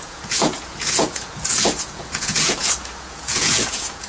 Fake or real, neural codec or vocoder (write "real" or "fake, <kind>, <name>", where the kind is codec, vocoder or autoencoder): fake, vocoder, Vocos